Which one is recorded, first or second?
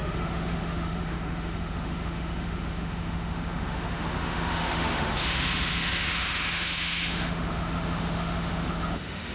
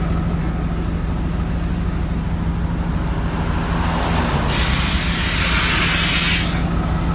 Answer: second